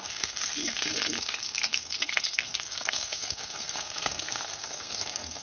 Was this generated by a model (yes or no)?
yes